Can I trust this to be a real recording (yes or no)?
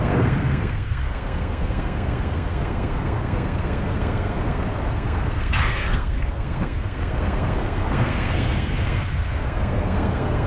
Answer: no